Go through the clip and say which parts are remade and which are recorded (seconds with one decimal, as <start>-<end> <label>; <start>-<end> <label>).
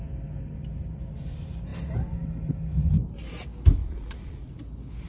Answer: 0.0-3.8 recorded; 3.8-4.5 remade; 4.5-5.1 recorded